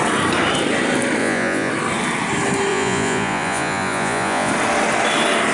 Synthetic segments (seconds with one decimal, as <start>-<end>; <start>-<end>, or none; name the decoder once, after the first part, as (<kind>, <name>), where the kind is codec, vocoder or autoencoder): 1.2-1.7 (vocoder, Vocos); 2.7-4.5